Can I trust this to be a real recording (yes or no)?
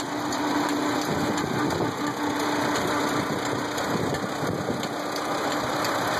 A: yes